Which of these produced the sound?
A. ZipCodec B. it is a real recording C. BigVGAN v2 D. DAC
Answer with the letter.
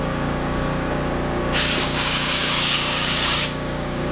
D